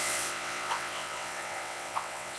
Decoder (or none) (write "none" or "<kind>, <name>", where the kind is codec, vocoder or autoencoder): vocoder, WaveNeXt